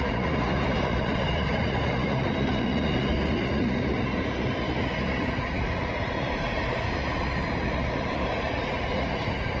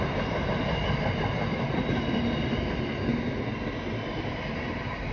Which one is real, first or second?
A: second